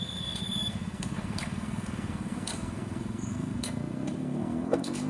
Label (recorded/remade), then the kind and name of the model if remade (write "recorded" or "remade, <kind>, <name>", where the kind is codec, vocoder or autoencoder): remade, codec, SNAC